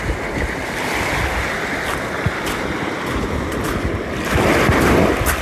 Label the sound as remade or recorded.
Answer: recorded